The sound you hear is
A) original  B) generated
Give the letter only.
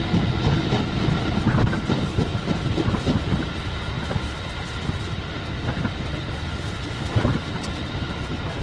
A